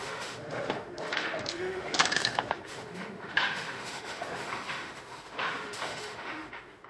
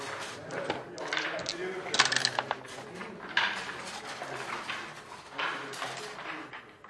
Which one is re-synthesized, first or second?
first